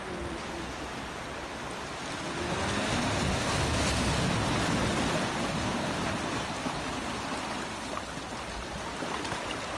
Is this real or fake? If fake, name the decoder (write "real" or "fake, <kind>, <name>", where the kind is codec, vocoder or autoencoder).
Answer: real